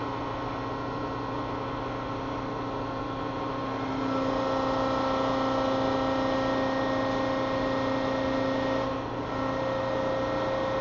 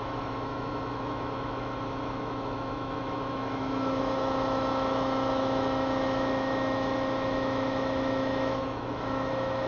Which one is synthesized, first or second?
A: second